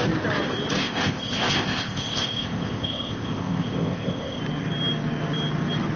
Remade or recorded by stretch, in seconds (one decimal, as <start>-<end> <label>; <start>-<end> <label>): 0.0-0.8 recorded; 0.8-4.4 remade; 4.4-6.0 recorded